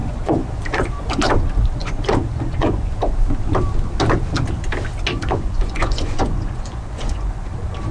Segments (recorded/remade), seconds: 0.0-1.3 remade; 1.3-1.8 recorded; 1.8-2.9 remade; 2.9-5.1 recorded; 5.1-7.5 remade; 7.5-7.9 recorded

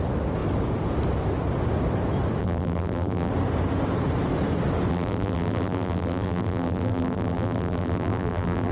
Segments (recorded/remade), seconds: 0.0-2.4 recorded; 2.4-3.3 remade; 3.3-4.9 recorded; 4.9-8.7 remade

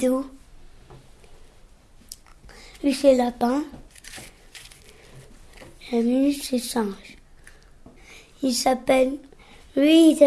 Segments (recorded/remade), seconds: 0.0-2.3 recorded; 2.3-4.8 remade; 4.8-10.3 recorded

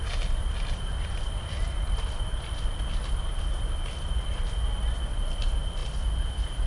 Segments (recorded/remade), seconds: 0.0-6.7 recorded

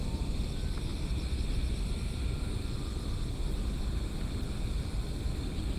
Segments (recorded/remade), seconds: 0.0-5.8 recorded